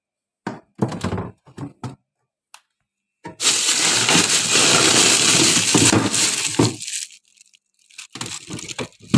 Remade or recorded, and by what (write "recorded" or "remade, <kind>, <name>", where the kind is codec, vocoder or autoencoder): recorded